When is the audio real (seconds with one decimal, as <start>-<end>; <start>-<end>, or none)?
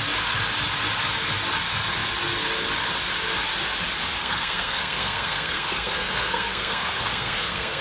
0.0-4.2